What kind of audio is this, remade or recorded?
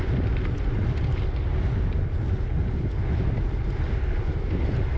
recorded